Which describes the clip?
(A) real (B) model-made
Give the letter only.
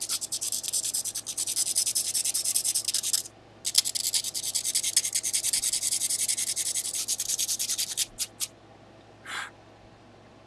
A